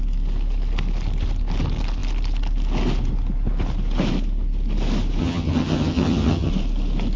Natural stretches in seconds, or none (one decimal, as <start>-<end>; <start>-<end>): 0.0-5.2; 6.5-7.2